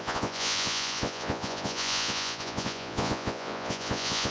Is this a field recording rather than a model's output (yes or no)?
no